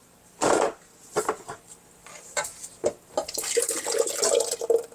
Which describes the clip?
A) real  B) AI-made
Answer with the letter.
A